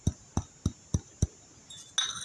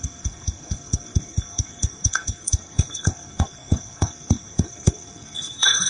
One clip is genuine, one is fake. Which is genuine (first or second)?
first